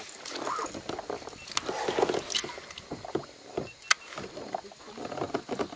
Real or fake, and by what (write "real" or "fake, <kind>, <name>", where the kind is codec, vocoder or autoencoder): real